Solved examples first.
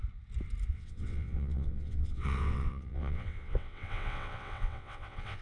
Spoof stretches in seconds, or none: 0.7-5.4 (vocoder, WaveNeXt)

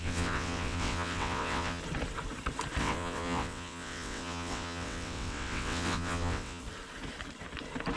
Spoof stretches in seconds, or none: 0.0-1.8 (vocoder, WaveNeXt); 2.8-6.6